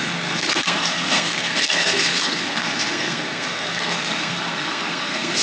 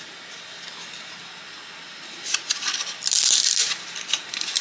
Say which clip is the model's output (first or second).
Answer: first